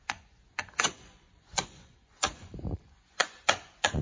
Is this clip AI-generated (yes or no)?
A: yes